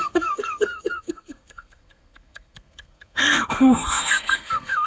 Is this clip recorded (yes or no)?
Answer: no